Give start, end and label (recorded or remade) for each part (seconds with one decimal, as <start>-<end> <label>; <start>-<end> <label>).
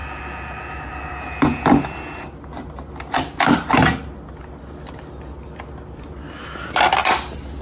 0.0-7.6 recorded